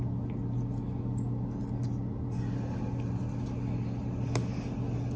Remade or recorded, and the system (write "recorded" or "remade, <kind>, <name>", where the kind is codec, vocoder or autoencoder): recorded